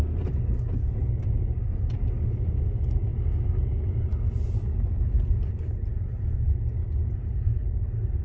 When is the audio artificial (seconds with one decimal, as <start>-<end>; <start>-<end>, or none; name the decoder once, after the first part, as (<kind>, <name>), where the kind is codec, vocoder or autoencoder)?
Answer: none